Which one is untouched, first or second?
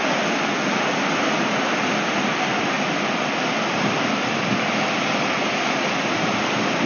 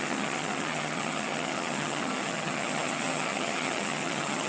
first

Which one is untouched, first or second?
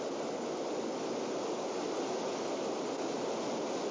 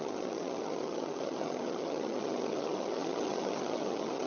first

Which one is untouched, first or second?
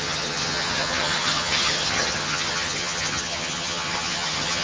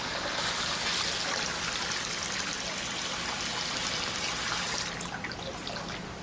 second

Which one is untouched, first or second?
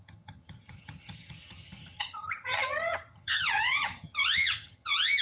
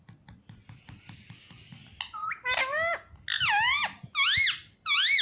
second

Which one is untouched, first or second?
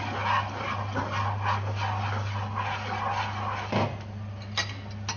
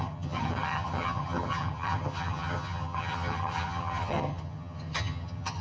first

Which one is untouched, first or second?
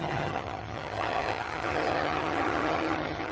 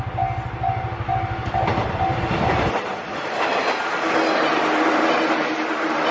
second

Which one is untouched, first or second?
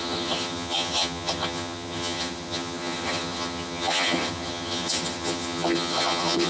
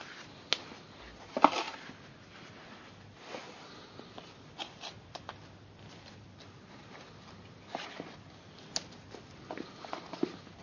second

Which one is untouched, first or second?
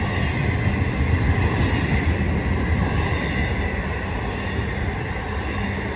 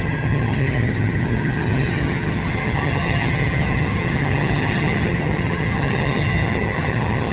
first